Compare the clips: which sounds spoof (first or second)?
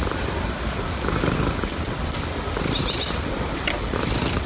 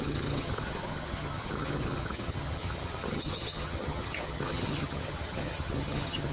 second